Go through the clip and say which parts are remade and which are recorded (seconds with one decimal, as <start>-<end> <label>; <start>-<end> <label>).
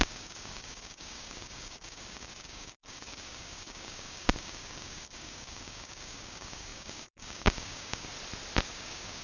0.0-8.1 remade; 8.1-8.7 recorded; 8.7-9.2 remade